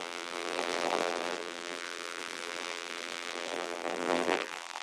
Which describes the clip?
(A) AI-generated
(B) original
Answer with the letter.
A